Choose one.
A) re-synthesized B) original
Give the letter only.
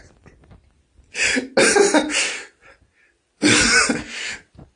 B